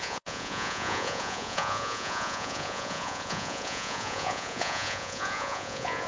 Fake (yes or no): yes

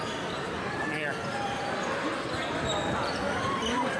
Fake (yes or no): no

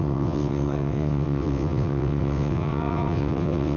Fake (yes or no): yes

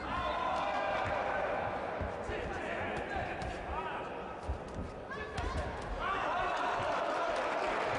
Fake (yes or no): no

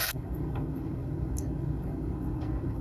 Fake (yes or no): yes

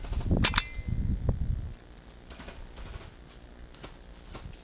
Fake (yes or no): no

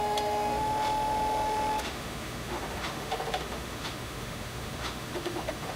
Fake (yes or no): yes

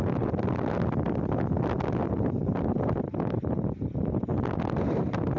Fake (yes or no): no